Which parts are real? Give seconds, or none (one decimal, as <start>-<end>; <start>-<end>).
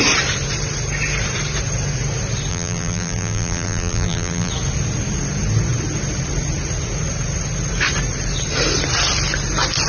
0.0-2.5; 4.5-9.9